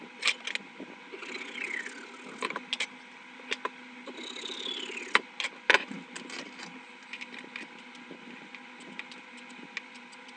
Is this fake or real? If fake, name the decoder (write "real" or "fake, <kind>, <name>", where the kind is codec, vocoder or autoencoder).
real